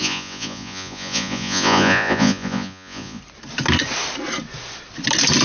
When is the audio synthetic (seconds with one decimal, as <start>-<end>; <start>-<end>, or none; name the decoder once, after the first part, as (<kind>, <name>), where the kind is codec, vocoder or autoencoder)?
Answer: 0.0-3.2 (vocoder, Vocos)